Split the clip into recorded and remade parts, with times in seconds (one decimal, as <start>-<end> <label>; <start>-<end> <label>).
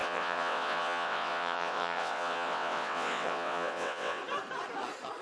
0.0-4.2 remade; 4.2-5.2 recorded